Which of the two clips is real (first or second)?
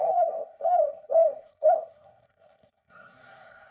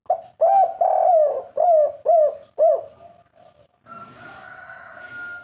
second